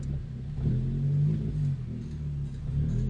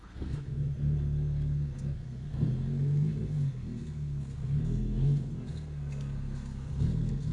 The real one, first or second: first